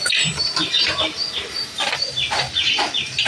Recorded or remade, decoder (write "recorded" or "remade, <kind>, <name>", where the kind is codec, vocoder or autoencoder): remade, vocoder, BigVGAN v2